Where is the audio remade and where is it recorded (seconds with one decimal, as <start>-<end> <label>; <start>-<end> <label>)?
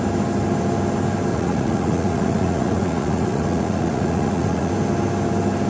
0.0-1.3 recorded; 1.3-4.7 remade; 4.7-5.7 recorded